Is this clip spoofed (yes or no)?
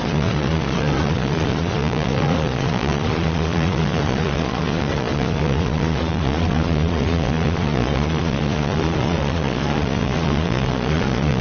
yes